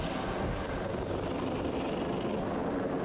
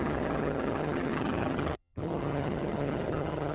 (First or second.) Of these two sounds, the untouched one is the first